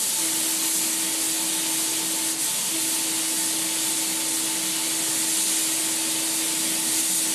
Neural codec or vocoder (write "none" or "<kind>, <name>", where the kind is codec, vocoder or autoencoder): none